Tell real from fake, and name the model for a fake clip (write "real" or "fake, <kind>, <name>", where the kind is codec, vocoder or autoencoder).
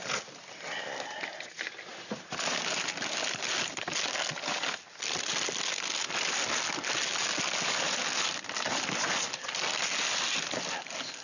real